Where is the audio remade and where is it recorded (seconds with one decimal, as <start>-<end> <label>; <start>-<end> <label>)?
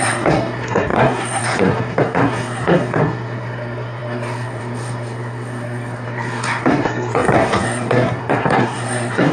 0.0-9.3 remade